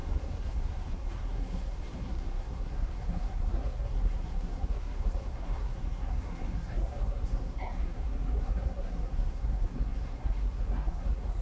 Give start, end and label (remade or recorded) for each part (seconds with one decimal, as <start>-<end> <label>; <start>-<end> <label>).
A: 0.0-11.4 remade